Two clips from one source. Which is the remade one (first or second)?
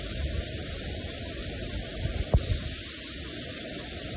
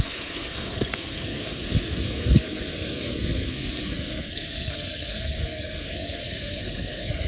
second